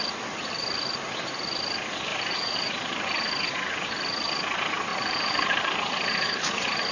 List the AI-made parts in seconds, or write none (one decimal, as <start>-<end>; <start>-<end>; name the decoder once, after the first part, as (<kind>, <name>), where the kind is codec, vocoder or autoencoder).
2.1-3.1 (vocoder, BigVGAN v2); 4.9-6.9